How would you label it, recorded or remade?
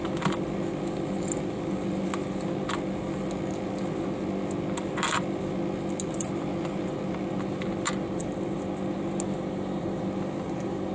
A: recorded